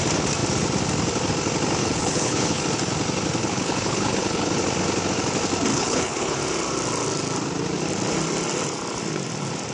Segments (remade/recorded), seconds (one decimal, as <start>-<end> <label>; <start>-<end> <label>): 0.0-1.8 recorded; 1.8-2.6 remade; 2.6-3.4 recorded; 3.4-4.6 remade; 4.6-5.7 recorded; 5.7-6.4 remade; 6.4-9.7 recorded